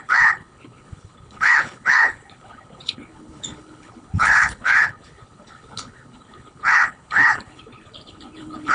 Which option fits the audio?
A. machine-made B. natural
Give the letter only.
A